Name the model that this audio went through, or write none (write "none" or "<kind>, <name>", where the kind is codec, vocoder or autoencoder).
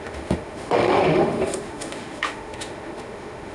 autoencoder, DAC-VAE